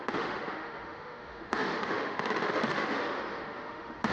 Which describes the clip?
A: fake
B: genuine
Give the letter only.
A